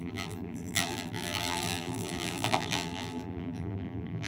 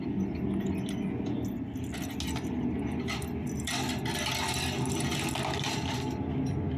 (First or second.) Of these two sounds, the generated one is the first